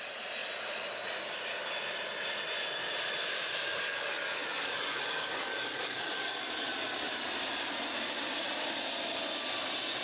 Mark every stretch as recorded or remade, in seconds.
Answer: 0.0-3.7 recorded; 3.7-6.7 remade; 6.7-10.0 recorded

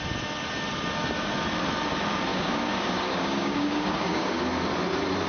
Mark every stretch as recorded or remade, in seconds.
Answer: 0.0-2.3 recorded; 2.3-4.4 remade; 4.4-5.3 recorded

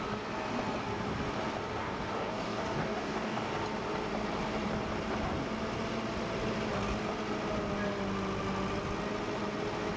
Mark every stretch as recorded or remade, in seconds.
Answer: 0.0-1.8 recorded; 1.8-3.5 remade; 3.5-10.0 recorded